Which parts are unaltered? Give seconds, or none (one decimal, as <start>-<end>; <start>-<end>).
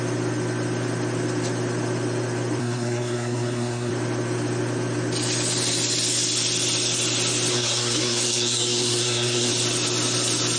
0.0-2.6; 3.9-7.5; 9.5-10.6